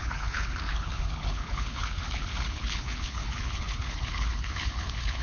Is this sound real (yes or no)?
no